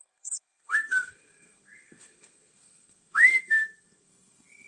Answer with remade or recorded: remade